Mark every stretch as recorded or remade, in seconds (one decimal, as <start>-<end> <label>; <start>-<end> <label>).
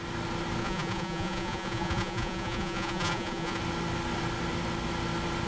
0.0-0.6 recorded; 0.6-3.6 remade; 3.6-5.5 recorded